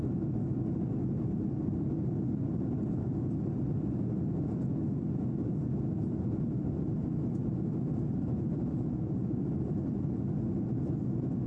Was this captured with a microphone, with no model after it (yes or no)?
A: yes